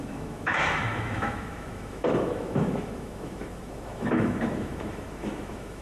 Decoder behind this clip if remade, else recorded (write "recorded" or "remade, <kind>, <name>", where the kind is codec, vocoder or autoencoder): remade, autoencoder, DAC-VAE